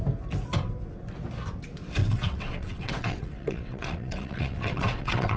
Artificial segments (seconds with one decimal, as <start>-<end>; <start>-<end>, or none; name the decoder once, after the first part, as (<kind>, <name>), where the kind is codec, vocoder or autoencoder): 2.0-5.4 (vocoder, WaveNeXt)